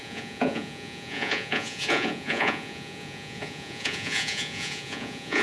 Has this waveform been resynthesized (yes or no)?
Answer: yes